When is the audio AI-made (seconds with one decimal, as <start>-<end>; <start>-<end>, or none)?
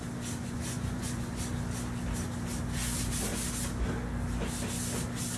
0.4-1.3